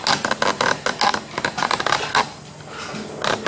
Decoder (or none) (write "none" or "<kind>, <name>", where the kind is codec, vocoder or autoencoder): none